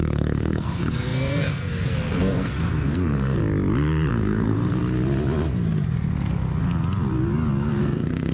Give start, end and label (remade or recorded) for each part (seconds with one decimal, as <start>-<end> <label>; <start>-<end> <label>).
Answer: 0.0-3.4 remade; 3.4-4.1 recorded; 4.1-4.8 remade; 4.8-7.8 recorded; 7.8-8.3 remade